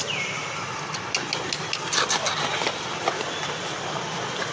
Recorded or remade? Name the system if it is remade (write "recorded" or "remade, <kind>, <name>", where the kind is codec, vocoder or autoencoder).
recorded